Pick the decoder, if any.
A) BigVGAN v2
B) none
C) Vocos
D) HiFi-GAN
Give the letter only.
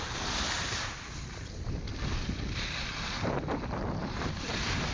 B